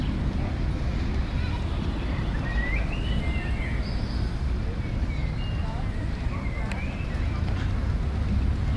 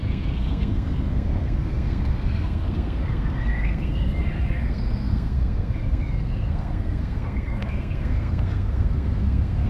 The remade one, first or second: second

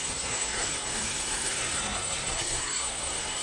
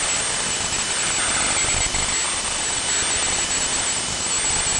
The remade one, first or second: first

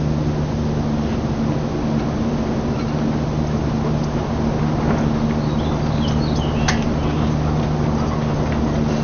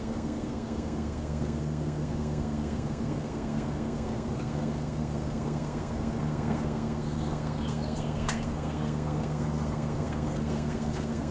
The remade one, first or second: second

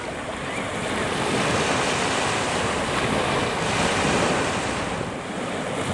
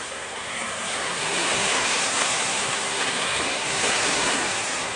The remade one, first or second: second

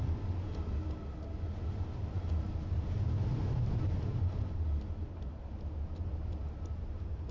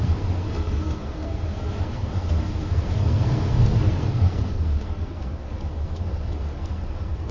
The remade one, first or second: second